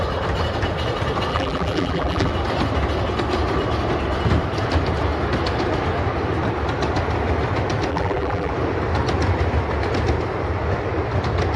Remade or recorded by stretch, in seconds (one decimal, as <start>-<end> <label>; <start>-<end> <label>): 0.0-1.3 recorded; 1.3-2.3 remade; 2.3-7.9 recorded; 7.9-8.5 remade; 8.5-11.6 recorded